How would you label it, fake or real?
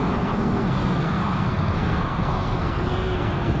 fake